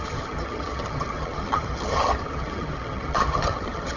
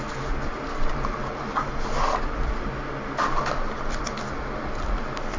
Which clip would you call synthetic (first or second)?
first